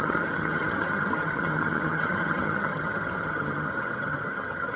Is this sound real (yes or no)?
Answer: no